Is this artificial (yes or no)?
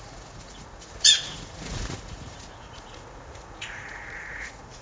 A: yes